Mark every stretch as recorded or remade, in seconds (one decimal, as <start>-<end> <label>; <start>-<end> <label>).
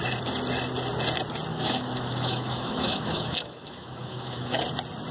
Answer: 0.0-1.5 recorded; 1.5-4.6 remade; 4.6-5.1 recorded